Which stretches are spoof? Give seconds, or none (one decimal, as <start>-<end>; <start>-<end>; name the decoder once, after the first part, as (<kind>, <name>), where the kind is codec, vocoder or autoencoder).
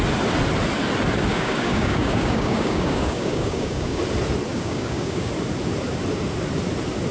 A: 1.3-4.0 (codec, DAC); 4.5-5.3